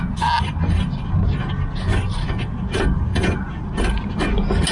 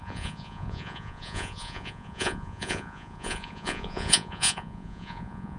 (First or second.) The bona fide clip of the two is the first